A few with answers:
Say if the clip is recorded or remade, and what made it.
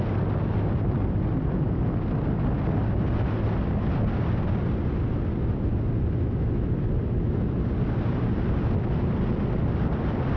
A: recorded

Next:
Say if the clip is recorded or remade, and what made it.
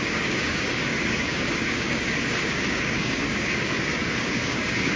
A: remade, codec, DAC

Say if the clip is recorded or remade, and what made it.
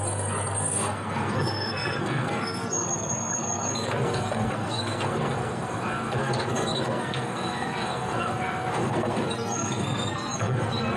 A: remade, codec, SNAC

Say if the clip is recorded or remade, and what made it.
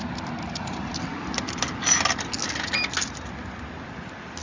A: recorded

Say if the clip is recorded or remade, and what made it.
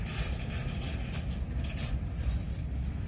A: recorded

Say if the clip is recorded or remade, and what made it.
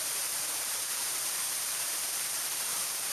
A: remade, vocoder, BigVGAN v2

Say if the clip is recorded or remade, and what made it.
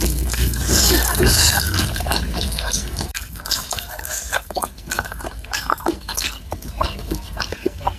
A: remade, codec, SNAC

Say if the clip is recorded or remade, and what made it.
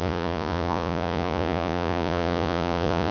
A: remade, vocoder, Vocos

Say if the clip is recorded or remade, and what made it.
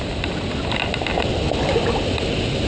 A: recorded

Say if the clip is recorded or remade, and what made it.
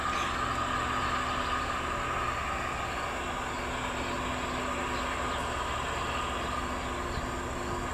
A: recorded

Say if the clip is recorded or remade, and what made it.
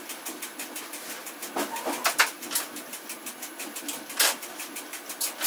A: recorded